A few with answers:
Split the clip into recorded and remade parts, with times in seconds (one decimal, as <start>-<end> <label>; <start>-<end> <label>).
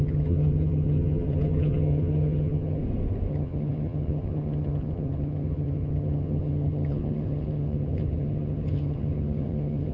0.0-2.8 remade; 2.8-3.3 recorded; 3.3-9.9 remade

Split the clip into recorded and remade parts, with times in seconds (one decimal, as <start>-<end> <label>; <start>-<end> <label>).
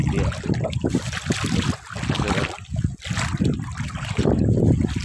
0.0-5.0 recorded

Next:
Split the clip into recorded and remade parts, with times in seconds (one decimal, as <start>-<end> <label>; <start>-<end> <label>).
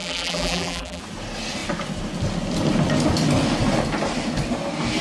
0.0-1.0 remade; 1.0-5.0 recorded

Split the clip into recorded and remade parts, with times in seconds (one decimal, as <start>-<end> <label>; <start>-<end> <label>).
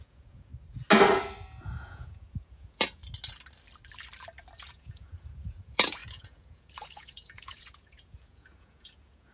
0.0-0.5 remade; 0.5-1.8 recorded; 1.8-3.0 remade; 3.0-4.7 recorded; 4.7-9.3 remade